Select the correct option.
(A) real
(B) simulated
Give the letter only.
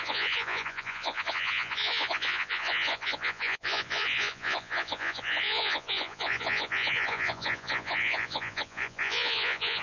B